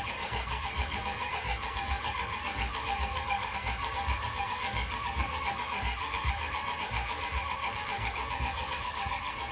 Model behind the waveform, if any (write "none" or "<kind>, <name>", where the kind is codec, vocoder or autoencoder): codec, SNAC